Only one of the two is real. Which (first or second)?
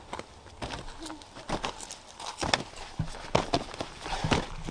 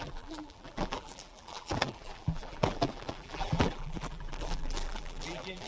first